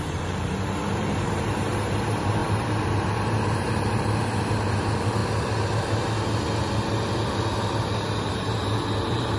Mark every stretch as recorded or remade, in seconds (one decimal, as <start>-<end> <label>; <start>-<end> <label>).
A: 0.0-5.2 remade; 5.2-7.9 recorded; 7.9-9.4 remade